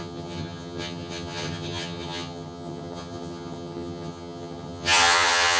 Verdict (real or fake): fake